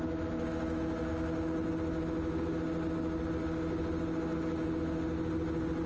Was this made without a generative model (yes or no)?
yes